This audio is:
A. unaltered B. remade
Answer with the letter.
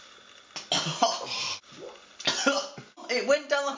A